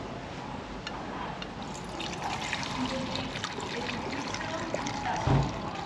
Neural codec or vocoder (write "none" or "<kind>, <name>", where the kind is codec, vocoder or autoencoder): none